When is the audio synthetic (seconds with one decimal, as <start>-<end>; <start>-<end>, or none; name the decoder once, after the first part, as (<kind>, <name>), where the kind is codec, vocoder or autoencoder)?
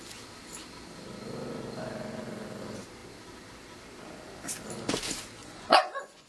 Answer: 5.4-6.3 (vocoder, Vocos)